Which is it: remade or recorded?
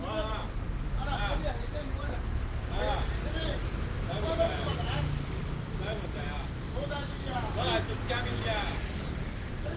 recorded